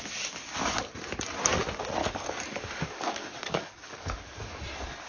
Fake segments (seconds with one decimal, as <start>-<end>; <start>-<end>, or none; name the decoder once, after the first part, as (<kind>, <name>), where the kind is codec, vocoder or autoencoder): 2.0-4.6 (codec, DAC)